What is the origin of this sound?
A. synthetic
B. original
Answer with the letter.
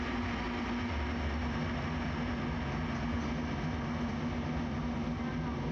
B